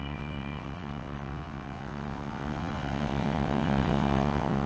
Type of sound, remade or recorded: remade